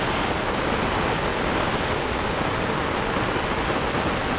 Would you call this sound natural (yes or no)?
yes